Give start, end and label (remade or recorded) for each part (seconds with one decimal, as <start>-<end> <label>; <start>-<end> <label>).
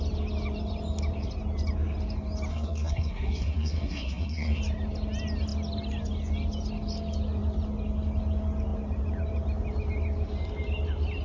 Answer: 0.0-2.5 recorded; 2.5-4.6 remade; 4.6-11.2 recorded